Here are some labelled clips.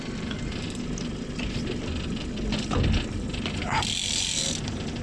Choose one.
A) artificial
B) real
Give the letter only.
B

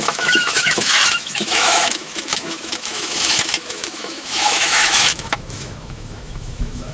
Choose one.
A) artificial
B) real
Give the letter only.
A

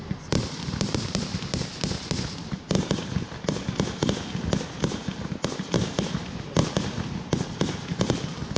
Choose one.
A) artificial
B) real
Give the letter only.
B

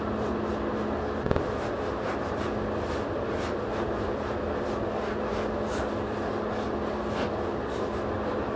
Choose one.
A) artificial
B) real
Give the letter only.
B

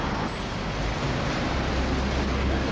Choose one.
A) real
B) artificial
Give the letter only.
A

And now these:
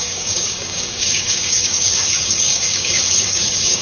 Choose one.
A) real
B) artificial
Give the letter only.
B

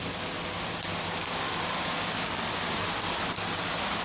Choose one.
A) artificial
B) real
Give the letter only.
B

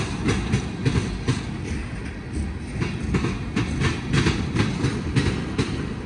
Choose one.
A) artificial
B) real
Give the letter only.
B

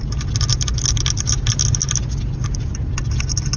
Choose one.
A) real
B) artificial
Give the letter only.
A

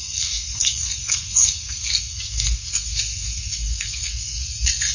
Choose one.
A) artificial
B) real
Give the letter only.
A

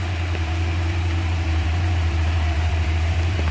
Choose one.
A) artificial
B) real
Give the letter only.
A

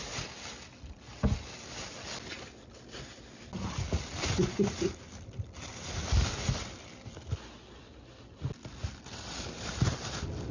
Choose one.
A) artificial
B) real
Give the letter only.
B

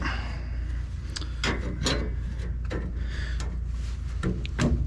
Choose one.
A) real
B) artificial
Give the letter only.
A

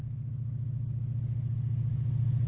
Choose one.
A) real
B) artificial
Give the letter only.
A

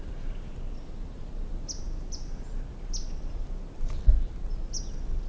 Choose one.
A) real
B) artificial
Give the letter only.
A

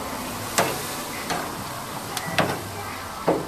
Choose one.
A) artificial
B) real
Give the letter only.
B